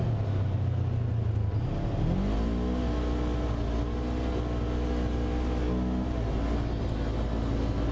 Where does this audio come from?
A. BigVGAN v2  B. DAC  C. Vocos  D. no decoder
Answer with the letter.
D